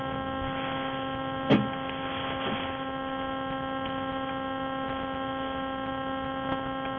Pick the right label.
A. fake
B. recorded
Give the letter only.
B